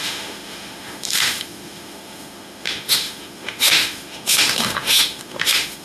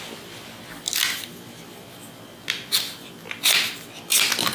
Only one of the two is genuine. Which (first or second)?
second